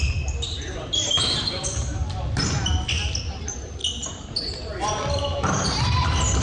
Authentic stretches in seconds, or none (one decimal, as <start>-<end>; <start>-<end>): 2.0-3.2; 3.8-5.1